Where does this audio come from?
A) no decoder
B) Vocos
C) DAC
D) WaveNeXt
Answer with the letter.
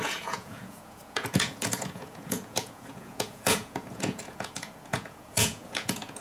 B